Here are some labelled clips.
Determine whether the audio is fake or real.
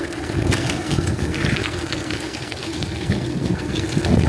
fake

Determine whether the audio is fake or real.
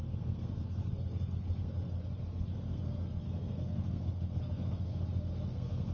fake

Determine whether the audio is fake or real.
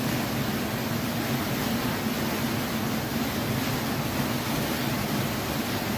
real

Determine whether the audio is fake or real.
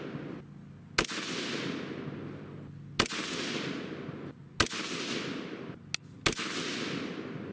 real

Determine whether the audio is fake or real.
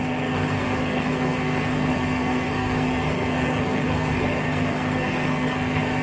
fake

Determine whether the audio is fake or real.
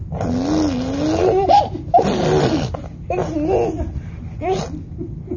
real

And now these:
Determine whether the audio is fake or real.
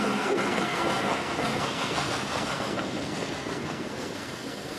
fake